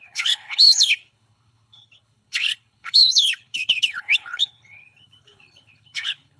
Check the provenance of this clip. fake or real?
fake